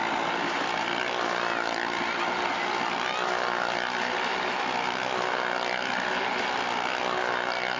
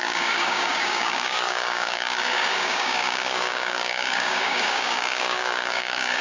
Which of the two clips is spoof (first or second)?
second